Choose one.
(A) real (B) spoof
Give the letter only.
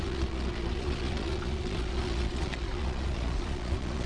B